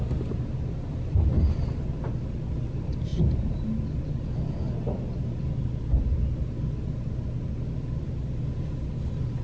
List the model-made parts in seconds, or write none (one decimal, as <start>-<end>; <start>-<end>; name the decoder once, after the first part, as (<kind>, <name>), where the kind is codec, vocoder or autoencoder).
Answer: none

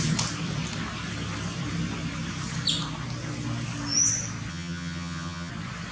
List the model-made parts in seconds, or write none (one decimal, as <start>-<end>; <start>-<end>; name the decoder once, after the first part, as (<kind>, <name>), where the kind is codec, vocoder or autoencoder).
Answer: 4.5-5.5 (vocoder, HiFi-GAN)

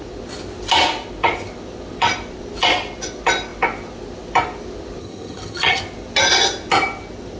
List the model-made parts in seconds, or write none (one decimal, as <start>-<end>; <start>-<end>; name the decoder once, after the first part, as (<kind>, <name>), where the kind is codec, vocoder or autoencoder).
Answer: 5.0-5.8 (vocoder, HiFi-GAN)

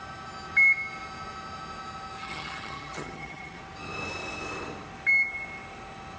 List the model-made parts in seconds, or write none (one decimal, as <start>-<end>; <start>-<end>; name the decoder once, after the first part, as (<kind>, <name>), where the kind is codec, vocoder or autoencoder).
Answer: 2.2-3.6 (vocoder, HiFi-GAN)

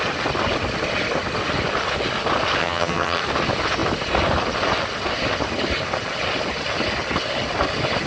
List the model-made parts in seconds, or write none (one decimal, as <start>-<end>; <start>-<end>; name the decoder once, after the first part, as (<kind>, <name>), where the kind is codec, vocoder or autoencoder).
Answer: 2.6-3.2 (vocoder, HiFi-GAN)

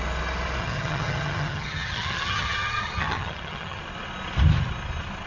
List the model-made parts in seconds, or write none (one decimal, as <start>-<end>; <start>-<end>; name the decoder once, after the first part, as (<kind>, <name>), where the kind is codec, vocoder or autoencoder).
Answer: 0.6-3.8 (vocoder, HiFi-GAN)

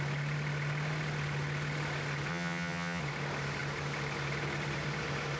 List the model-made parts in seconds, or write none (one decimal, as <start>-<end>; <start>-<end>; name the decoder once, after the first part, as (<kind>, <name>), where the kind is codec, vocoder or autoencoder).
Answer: 2.3-3.0 (vocoder, HiFi-GAN)

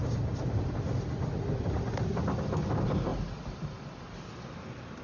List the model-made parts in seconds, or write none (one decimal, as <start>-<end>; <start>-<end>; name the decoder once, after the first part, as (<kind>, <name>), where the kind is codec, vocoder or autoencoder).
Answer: none